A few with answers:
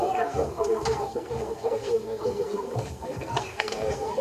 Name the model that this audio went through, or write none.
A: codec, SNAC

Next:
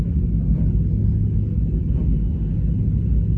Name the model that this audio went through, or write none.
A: none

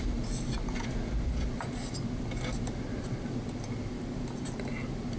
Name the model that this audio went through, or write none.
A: none